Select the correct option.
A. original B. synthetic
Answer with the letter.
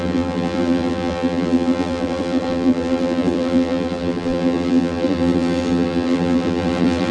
B